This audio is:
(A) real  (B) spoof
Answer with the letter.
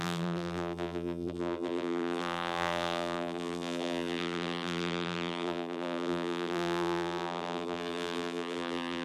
B